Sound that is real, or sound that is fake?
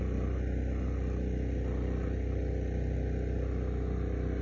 real